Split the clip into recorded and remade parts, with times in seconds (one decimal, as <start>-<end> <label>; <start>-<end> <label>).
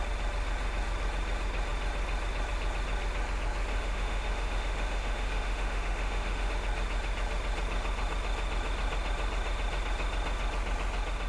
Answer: 0.0-3.7 recorded; 3.7-6.5 remade; 6.5-11.3 recorded